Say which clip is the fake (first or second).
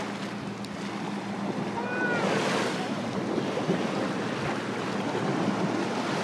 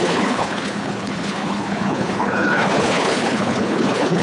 second